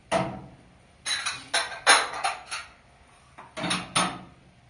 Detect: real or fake real